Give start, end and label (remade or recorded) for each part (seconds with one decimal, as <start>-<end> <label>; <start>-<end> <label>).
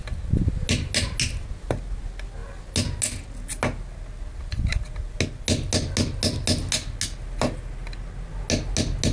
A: 0.0-9.1 recorded